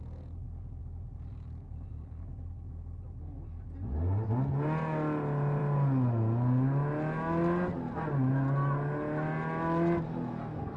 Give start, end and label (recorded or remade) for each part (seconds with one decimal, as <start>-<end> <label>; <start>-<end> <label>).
0.0-10.8 recorded